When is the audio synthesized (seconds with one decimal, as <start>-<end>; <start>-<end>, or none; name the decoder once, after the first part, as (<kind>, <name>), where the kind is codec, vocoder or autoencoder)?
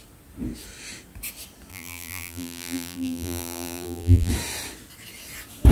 1.7-4.3 (vocoder, BigVGAN v2)